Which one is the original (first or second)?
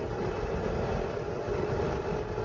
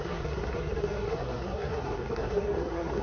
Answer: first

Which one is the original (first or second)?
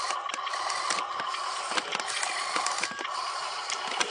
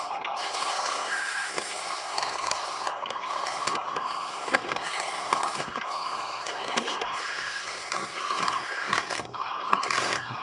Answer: first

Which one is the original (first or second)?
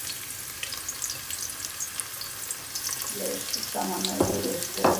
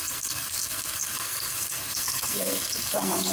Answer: first